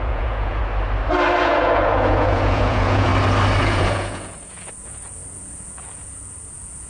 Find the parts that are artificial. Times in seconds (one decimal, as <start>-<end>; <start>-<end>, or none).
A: 0.0-0.6; 1.4-3.1; 3.6-6.9